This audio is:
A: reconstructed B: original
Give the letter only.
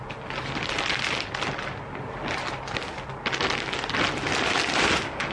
B